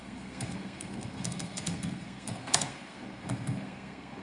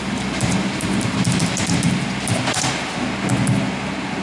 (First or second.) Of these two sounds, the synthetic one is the first